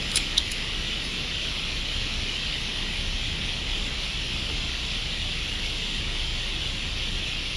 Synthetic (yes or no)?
yes